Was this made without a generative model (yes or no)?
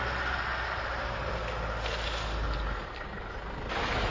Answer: yes